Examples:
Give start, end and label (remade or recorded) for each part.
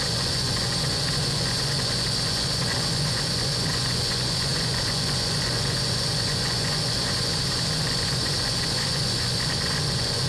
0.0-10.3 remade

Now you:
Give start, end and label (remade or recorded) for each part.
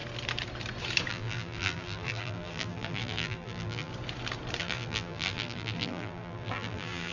0.0-1.1 recorded; 1.1-3.9 remade; 3.9-4.6 recorded; 4.6-7.1 remade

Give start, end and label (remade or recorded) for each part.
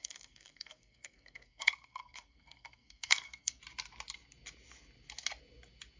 0.0-3.6 remade; 3.6-6.0 recorded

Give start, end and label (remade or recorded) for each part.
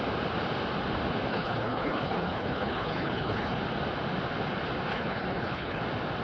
0.0-1.3 recorded; 1.3-3.6 remade; 3.6-4.9 recorded; 4.9-5.8 remade; 5.8-6.2 recorded